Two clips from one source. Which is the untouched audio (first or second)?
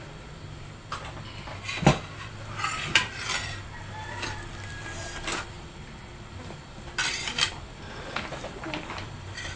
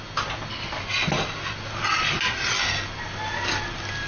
second